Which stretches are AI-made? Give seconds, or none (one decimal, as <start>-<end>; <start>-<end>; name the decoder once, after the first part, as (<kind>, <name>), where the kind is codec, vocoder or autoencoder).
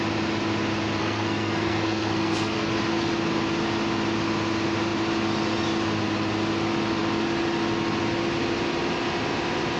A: 1.0-2.7 (codec, SNAC)